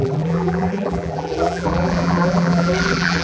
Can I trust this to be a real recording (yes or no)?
no